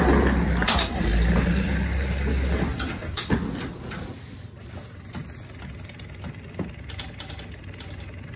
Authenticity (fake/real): real